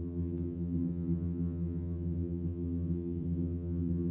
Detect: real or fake fake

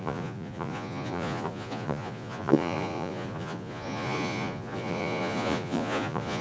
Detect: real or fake fake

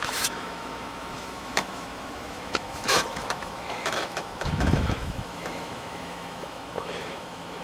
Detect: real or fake fake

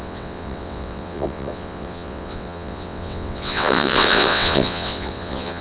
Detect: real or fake fake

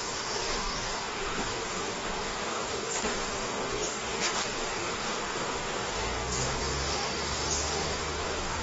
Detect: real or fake fake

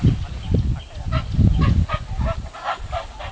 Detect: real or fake real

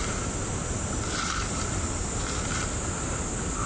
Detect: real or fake real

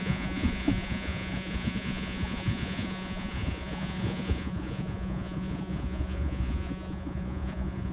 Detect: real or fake fake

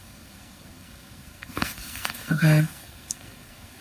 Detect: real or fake fake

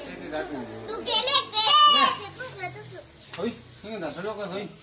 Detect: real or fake real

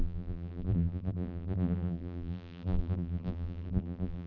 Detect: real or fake fake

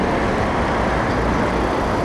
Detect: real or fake real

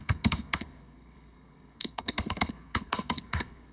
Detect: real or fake fake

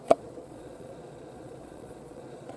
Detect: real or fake fake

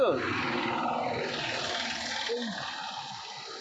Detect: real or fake real